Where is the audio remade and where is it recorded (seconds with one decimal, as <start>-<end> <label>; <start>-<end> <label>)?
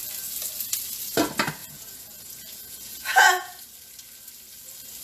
0.0-1.6 recorded; 1.6-3.6 remade; 3.6-5.0 recorded